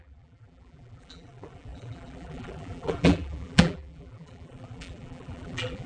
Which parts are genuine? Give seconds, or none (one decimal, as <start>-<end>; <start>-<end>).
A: none